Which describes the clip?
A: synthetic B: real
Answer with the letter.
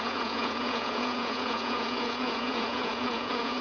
A